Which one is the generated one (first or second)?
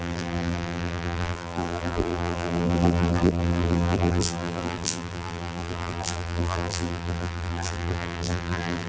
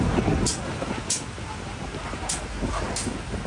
first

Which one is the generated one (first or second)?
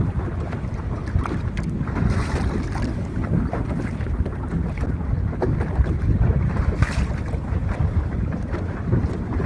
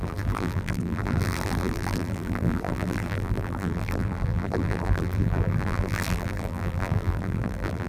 second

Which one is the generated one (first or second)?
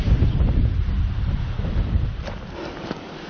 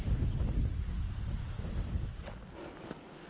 first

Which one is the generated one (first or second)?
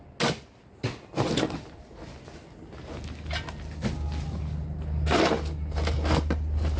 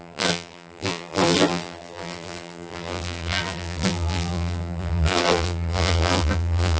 second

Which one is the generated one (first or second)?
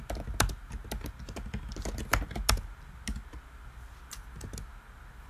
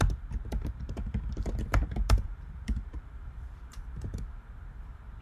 second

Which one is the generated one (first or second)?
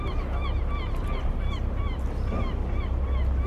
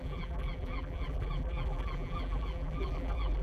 second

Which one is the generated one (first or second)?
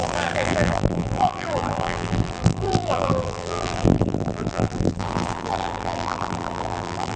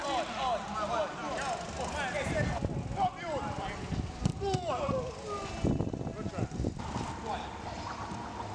first